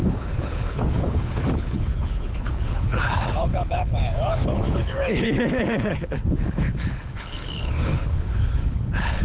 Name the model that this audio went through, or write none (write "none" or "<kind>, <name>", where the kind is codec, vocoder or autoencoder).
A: codec, HILCodec